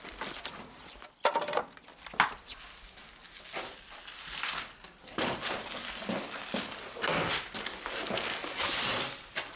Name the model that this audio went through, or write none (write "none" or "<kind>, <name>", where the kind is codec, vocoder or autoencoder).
none